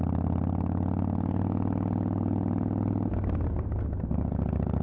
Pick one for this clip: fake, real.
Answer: real